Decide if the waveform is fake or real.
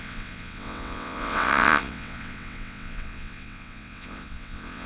fake